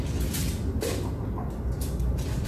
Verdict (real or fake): real